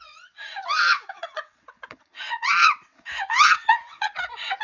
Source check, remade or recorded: remade